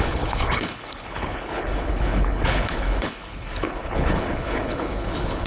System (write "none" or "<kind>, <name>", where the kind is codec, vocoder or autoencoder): codec, HILCodec